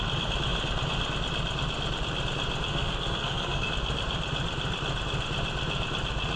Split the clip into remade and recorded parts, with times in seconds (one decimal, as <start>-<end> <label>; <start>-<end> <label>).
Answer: 0.0-2.7 recorded; 2.7-3.7 remade; 3.7-6.4 recorded

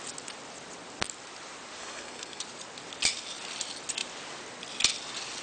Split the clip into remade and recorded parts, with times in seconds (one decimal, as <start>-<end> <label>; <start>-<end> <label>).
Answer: 0.0-1.8 recorded; 1.8-2.4 remade; 2.4-5.4 recorded

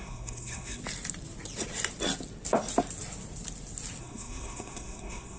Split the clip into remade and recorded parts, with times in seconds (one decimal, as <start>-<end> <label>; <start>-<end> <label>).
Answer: 0.0-0.8 remade; 0.8-4.0 recorded; 4.0-5.4 remade

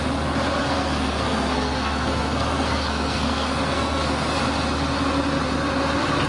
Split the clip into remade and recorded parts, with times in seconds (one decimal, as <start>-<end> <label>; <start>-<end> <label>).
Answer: 0.0-0.6 recorded; 0.6-4.4 remade; 4.4-6.3 recorded

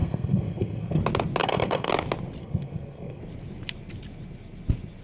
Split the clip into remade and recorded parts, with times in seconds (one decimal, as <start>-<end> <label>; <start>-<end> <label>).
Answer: 0.0-1.0 remade; 1.0-1.4 recorded; 1.4-1.9 remade; 1.9-2.4 recorded; 2.4-3.2 remade; 3.2-5.0 recorded

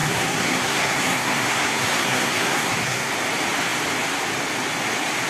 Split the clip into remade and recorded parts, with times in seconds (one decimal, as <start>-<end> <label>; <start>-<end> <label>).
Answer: 0.0-3.1 remade; 3.1-5.3 recorded

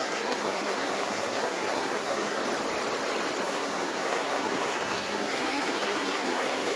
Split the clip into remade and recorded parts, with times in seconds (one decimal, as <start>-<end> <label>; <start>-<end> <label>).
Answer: 0.0-2.4 remade; 2.4-3.4 recorded; 3.4-6.8 remade